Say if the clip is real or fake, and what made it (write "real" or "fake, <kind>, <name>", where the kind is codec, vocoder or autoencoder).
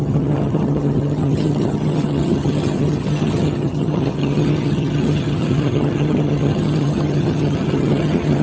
fake, vocoder, HiFi-GAN